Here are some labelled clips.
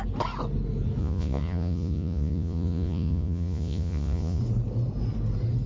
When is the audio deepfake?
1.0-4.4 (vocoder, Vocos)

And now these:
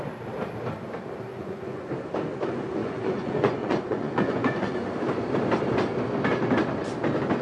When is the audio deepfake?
1.3-1.9 (vocoder, Vocos); 2.8-4.9

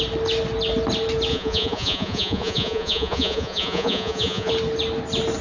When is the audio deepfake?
1.3-4.5 (vocoder, Vocos)

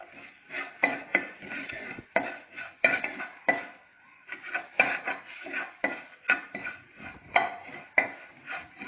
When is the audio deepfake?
0.8-3.2 (vocoder, Vocos); 3.9-4.5; 6.6-7.7

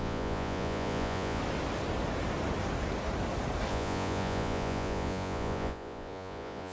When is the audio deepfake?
0.0-1.4 (vocoder, Vocos); 3.7-6.7